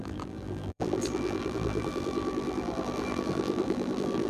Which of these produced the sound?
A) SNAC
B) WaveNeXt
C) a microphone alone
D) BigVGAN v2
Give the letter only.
D